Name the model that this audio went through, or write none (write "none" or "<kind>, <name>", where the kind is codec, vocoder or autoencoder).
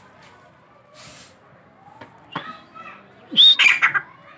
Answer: none